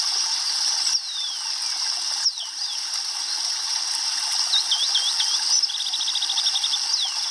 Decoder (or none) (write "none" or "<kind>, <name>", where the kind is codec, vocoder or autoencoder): none